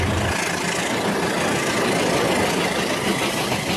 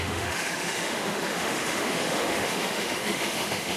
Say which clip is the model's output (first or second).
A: second